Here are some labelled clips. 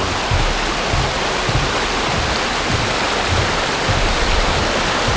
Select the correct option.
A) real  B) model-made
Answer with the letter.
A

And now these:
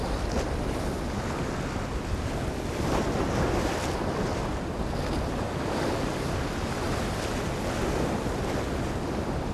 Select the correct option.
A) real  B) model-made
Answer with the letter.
A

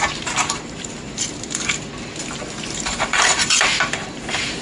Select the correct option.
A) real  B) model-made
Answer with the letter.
B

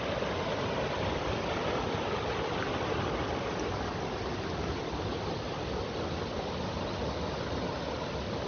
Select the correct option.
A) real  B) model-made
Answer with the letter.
A